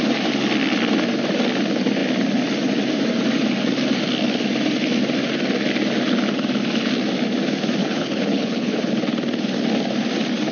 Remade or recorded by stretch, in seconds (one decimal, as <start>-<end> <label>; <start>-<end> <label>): 0.0-7.8 recorded; 7.8-8.9 remade; 8.9-10.5 recorded